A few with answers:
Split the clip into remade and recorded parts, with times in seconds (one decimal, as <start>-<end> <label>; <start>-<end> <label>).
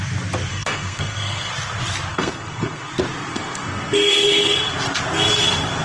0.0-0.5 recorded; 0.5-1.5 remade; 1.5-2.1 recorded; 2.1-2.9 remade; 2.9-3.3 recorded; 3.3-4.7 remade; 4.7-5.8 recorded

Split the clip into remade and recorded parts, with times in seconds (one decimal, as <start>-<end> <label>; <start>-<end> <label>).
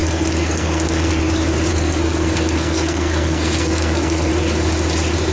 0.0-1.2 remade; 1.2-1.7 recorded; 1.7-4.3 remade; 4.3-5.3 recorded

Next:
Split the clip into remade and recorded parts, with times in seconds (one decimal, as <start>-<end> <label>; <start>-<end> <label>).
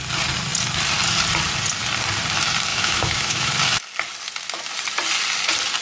0.0-2.7 recorded; 2.7-3.5 remade; 3.5-5.8 recorded